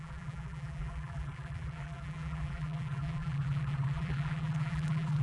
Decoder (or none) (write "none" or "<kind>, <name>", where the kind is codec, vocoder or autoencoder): vocoder, BigVGAN v2